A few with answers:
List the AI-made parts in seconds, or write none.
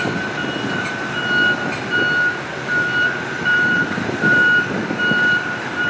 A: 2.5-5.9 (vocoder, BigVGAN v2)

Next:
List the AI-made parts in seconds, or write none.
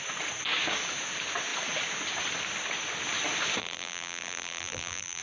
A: 3.6-5.2 (vocoder, BigVGAN v2)